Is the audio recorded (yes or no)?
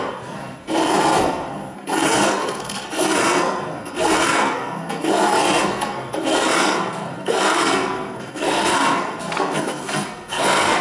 no